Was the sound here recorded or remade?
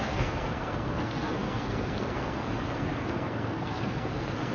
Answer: remade